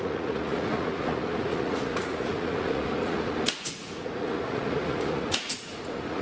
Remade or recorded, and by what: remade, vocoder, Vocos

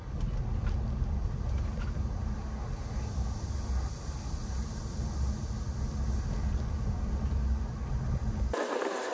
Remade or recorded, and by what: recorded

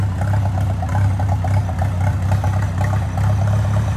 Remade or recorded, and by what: recorded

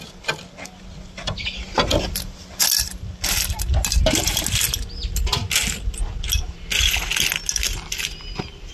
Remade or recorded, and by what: recorded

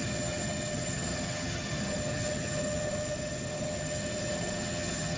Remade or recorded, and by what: remade, vocoder, HiFi-GAN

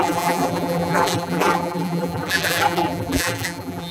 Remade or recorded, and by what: remade, vocoder, BigVGAN v2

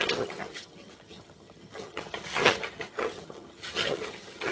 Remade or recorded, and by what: remade, vocoder, HiFi-GAN